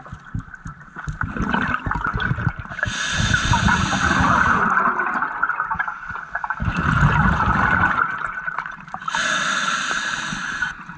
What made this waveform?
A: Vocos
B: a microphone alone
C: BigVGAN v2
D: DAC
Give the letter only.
B